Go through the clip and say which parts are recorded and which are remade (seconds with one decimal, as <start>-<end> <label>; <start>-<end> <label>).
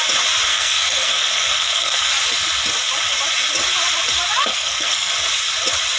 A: 0.0-0.5 recorded; 0.5-2.1 remade; 2.1-4.5 recorded; 4.5-5.1 remade; 5.1-6.0 recorded